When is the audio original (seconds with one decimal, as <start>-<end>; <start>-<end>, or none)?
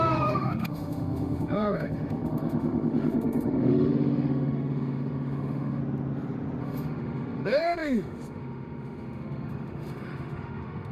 5.8-6.6